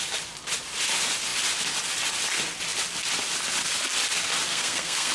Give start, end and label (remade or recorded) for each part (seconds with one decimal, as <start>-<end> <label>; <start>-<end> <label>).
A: 0.0-4.5 recorded; 4.5-5.1 remade

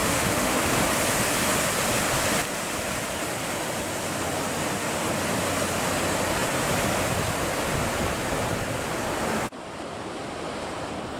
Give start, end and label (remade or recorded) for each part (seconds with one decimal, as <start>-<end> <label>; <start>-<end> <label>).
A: 0.0-0.6 remade; 0.6-11.2 recorded

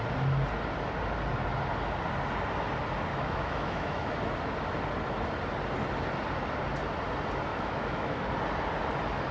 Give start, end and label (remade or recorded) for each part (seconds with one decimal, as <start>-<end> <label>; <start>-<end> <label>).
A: 0.0-3.1 recorded; 3.1-4.1 remade; 4.1-7.5 recorded; 7.5-8.3 remade; 8.3-9.3 recorded

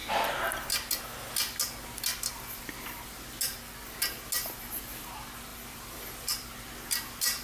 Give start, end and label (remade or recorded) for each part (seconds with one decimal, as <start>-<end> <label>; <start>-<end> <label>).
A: 0.0-5.5 recorded; 5.5-6.5 remade; 6.5-7.4 recorded

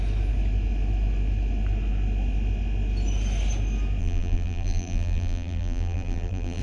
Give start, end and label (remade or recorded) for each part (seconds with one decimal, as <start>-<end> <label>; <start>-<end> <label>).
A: 0.0-4.0 recorded; 4.0-6.6 remade

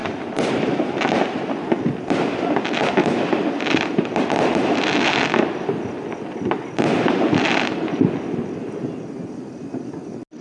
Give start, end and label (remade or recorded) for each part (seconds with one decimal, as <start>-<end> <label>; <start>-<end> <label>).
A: 0.0-10.4 recorded